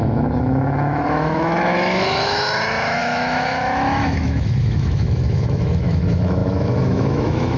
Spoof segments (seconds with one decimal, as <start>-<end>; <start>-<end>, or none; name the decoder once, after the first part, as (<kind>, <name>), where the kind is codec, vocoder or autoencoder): 0.0-7.6 (autoencoder, DAC-VAE)